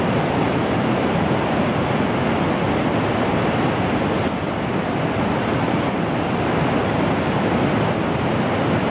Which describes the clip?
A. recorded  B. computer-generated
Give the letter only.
A